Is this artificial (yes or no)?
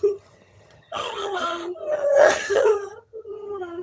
yes